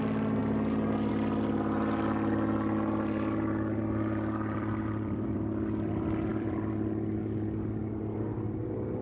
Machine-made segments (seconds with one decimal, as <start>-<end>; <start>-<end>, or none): 3.8-5.4; 6.3-7.8